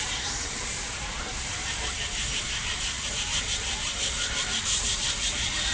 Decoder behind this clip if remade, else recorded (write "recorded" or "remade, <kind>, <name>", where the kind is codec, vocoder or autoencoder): remade, vocoder, BigVGAN v2